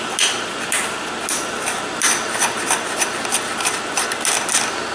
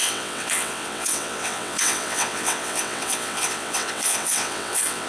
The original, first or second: first